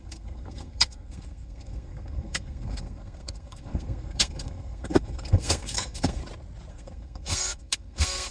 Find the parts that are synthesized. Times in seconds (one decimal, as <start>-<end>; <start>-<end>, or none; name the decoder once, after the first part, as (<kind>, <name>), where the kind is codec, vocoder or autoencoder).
0.0-6.2 (codec, SNAC); 6.7-8.3